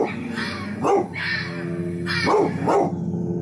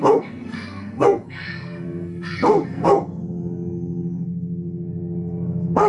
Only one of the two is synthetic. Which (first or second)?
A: second